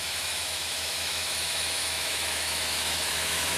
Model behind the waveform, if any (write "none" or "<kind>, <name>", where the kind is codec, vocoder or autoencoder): autoencoder, DAC-VAE